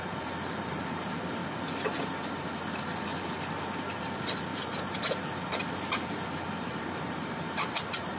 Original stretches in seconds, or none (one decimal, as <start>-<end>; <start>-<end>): 1.4-3.6